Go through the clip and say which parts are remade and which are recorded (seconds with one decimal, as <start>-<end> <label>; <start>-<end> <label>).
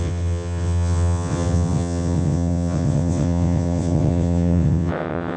0.0-5.4 remade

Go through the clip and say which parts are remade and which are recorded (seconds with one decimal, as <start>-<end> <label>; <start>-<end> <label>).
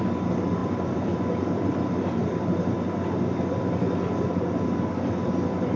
0.0-0.6 recorded; 0.6-2.7 remade; 2.7-5.8 recorded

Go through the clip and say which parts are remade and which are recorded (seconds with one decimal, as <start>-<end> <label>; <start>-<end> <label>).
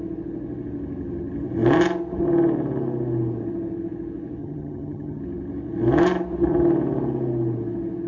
0.0-4.4 recorded; 4.4-5.2 remade; 5.2-8.1 recorded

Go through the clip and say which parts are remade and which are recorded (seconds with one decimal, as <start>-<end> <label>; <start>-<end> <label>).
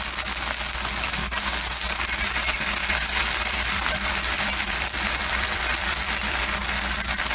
0.0-2.8 recorded; 2.8-6.4 remade; 6.4-7.3 recorded